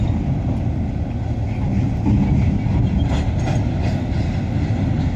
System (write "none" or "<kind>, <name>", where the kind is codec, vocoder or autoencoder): none